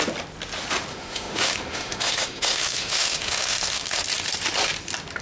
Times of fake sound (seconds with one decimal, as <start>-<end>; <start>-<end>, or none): 0.9-4.0